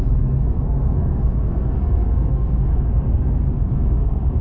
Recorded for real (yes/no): no